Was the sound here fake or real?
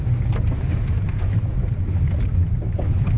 fake